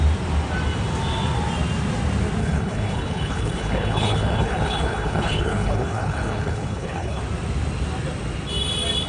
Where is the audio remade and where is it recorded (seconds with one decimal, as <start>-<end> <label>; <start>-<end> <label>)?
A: 0.0-2.4 recorded; 2.4-7.2 remade; 7.2-9.1 recorded